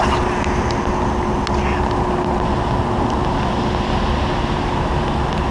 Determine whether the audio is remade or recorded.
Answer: recorded